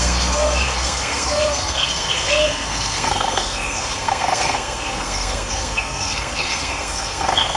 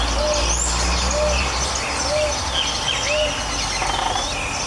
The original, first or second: second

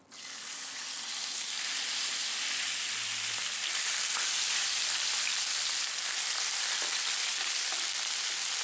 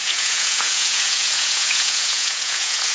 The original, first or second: first